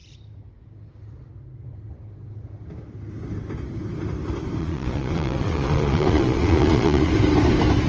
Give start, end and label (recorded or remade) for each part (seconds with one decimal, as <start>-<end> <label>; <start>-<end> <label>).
0.0-4.6 recorded; 4.6-7.1 remade; 7.1-7.9 recorded